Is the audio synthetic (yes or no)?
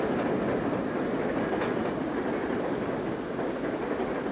no